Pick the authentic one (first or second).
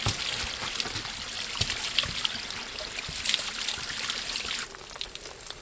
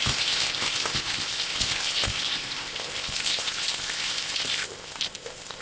first